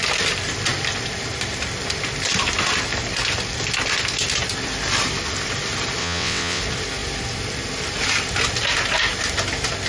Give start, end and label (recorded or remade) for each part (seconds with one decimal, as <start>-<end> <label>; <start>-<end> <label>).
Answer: 0.0-6.0 recorded; 6.0-6.6 remade; 6.6-9.9 recorded